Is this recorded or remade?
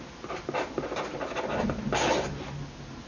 recorded